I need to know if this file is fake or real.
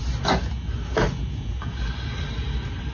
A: real